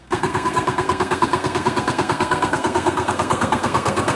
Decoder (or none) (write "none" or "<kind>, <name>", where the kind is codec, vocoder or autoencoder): codec, SNAC